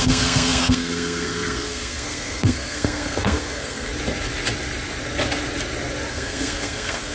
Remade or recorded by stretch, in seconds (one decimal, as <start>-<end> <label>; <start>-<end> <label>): 0.0-3.9 remade; 3.9-6.1 recorded; 6.1-7.1 remade